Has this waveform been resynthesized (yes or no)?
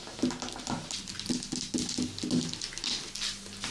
no